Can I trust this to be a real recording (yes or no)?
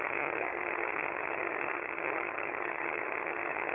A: no